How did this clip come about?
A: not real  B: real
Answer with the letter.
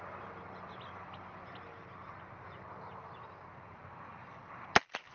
B